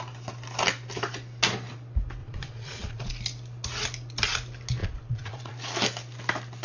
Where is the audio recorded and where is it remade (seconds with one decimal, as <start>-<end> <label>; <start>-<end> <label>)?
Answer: 0.0-2.2 recorded; 2.2-3.1 remade; 3.1-4.8 recorded; 4.8-5.5 remade; 5.5-6.6 recorded